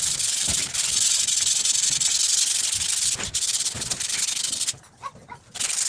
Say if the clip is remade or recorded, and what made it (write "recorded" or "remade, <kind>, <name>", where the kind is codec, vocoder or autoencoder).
recorded